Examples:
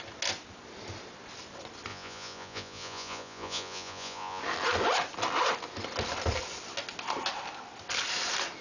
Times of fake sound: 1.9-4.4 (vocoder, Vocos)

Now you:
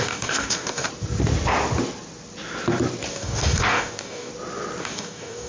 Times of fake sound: 0.0-0.9 (codec, DAC); 3.1-4.3; 4.8-5.5

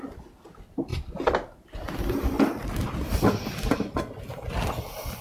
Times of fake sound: none

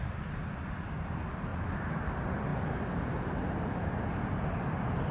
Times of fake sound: 1.5-2.1 (vocoder, BigVGAN v2)